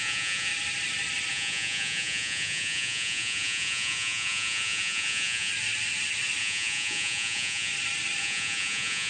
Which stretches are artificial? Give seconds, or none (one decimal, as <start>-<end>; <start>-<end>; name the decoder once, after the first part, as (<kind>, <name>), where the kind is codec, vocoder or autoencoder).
0.0-0.5 (vocoder, Vocos); 1.3-5.5; 6.4-7.7; 8.2-9.1